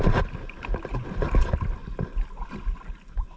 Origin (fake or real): real